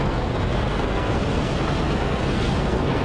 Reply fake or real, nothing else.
fake